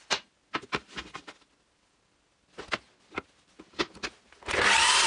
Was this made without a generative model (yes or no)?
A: yes